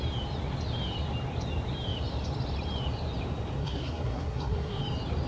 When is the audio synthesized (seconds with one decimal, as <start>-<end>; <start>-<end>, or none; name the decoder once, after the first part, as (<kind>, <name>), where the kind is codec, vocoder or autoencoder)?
3.6-4.8 (codec, SNAC)